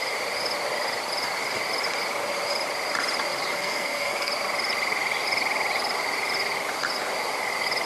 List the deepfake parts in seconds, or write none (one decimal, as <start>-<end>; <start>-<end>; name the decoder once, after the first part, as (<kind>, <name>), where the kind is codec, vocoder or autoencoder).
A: 3.5-4.3 (codec, SNAC)